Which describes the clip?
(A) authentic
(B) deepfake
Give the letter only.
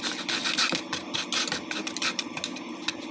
A